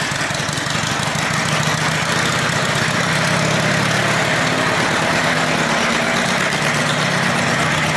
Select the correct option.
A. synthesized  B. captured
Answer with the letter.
B